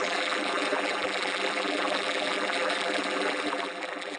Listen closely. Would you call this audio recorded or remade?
remade